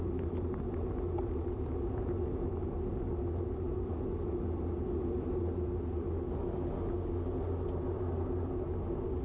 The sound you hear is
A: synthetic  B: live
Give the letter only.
B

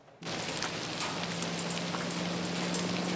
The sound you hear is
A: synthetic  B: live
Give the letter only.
B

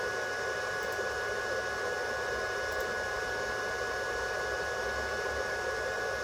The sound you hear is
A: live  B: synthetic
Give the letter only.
A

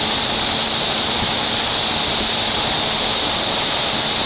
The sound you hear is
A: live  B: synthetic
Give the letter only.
A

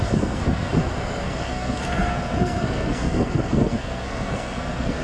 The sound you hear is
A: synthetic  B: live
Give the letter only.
A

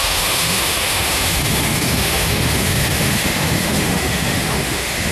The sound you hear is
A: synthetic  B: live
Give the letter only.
A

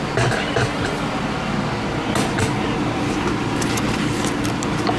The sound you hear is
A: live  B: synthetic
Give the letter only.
A